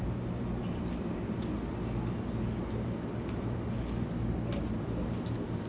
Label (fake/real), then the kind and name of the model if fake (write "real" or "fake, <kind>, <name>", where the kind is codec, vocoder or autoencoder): real